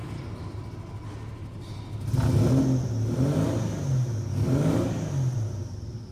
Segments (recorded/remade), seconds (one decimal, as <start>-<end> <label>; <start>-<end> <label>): 0.0-4.3 recorded; 4.3-5.1 remade; 5.1-6.1 recorded